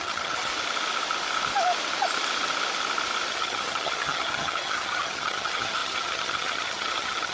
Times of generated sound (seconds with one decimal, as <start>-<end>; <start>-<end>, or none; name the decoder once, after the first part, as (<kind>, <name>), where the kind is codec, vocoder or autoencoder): 0.0-0.5 (vocoder, HiFi-GAN); 3.3-7.3